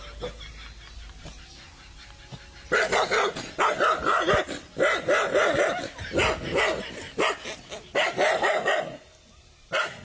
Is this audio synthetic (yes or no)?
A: no